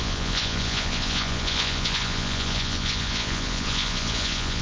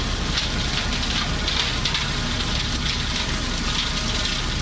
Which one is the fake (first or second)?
first